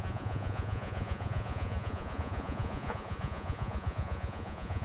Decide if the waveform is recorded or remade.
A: remade